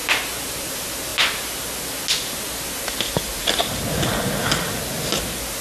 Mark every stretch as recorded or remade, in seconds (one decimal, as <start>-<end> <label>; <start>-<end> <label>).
0.0-5.6 recorded